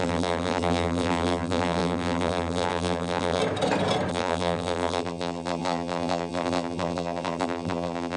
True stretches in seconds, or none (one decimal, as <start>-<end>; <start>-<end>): 3.4-4.1